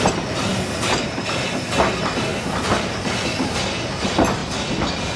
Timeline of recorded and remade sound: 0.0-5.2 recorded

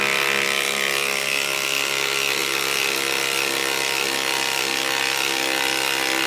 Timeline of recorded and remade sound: 0.0-6.3 recorded